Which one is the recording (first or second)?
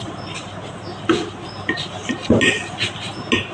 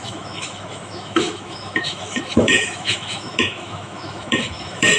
first